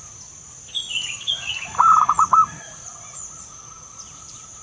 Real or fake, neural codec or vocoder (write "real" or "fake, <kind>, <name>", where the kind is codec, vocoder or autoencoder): fake, vocoder, Vocos